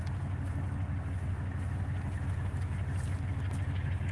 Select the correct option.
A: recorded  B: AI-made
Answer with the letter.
A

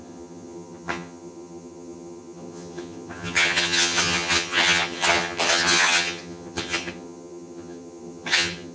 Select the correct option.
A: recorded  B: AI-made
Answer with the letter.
B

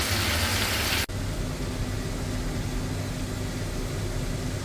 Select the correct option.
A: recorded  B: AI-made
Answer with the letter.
A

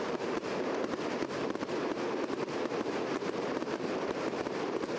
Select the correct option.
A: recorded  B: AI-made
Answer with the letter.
B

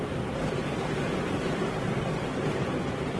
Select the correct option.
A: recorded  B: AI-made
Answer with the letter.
A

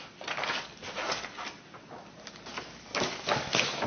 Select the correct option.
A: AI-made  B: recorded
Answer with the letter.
B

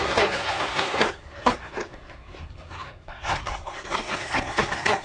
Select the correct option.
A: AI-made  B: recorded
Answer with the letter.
A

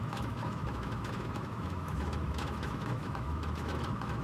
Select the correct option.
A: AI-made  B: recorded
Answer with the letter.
A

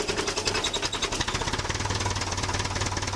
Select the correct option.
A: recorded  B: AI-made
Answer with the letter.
A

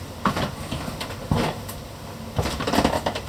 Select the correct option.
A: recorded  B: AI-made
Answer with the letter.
A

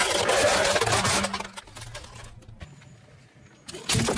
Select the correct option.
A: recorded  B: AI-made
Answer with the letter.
A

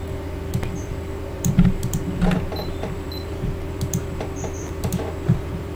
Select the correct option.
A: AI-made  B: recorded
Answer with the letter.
A